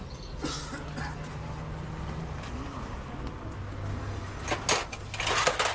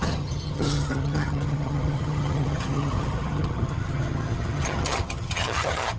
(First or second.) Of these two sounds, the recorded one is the first